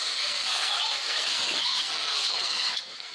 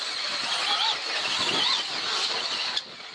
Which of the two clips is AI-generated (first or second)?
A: first